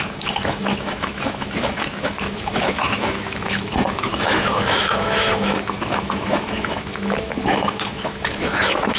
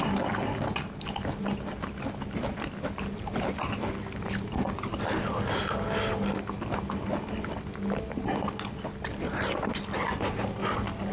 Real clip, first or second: second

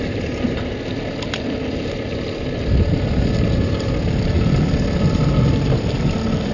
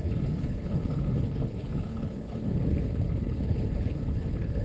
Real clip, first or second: first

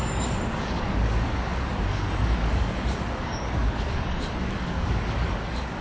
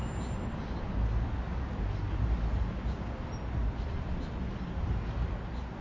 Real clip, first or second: second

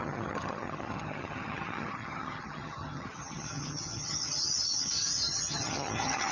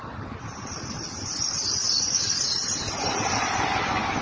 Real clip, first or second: second